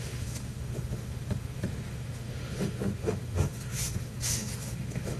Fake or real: fake